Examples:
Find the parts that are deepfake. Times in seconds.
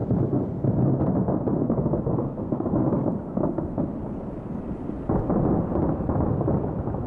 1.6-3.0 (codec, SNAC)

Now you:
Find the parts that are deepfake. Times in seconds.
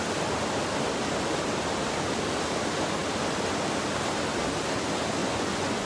5.2-5.9 (vocoder, Vocos)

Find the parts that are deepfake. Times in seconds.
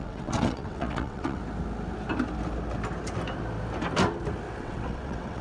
0.0-1.4 (vocoder, WaveNeXt); 4.6-5.4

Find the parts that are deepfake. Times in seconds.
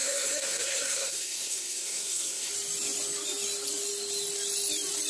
0.0-2.5 (codec, SNAC)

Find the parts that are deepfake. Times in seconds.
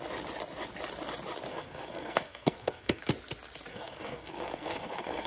1.5-3.1 (codec, SNAC); 3.7-5.3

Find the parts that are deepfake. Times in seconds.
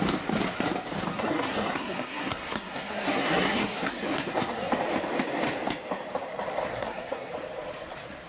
1.1-4.7 (codec, SNAC); 6.7-7.3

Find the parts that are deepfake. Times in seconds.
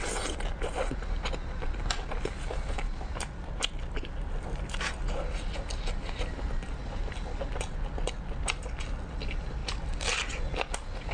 none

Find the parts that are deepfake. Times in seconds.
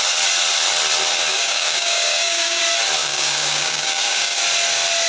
1.3-2.6 (codec, DAC); 3.0-4.4